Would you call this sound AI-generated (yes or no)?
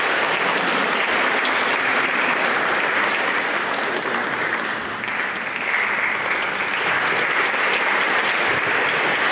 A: no